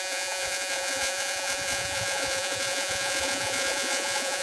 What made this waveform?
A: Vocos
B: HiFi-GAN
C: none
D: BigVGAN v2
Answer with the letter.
A